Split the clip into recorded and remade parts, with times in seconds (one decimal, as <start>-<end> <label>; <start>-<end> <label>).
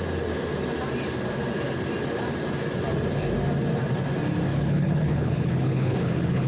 0.0-4.5 recorded; 4.5-6.5 remade